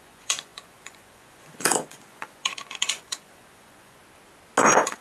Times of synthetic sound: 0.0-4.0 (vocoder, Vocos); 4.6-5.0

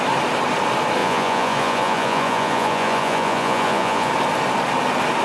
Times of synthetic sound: 1.0-4.1 (vocoder, Vocos)

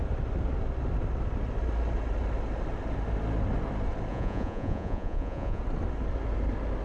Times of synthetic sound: 4.1-5.6 (vocoder, Vocos)